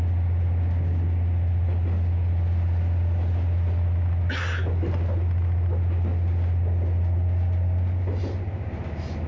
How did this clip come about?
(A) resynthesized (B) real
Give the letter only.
B